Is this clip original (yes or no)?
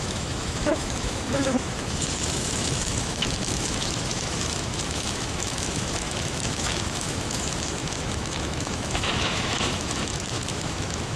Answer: no